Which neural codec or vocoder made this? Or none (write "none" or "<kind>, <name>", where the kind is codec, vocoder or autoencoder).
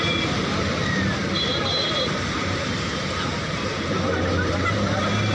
vocoder, BigVGAN v2